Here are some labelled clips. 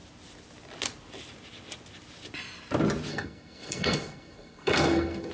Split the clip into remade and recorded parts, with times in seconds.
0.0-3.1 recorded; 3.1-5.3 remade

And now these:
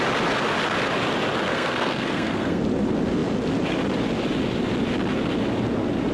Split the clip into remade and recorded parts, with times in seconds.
0.0-1.5 recorded; 1.5-2.6 remade; 2.6-6.1 recorded

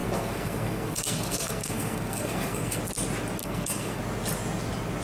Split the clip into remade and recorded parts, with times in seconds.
0.0-2.8 remade; 2.8-3.4 recorded; 3.4-4.0 remade; 4.0-5.0 recorded

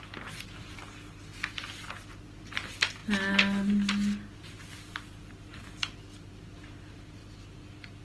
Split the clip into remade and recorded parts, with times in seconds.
0.0-8.0 recorded

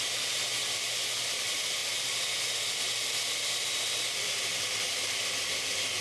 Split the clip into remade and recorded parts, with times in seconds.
0.0-6.0 recorded